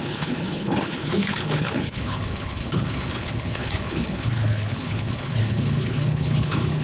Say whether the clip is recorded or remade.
remade